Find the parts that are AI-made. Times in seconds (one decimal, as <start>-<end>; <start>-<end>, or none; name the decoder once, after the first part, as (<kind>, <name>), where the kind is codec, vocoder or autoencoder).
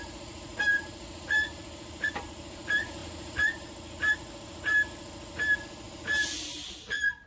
0.0-0.5 (vocoder, BigVGAN v2); 1.5-3.0; 6.7-7.3